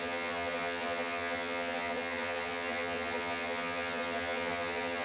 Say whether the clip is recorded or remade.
remade